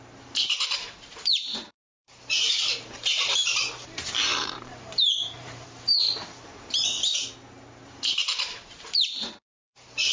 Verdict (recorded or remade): remade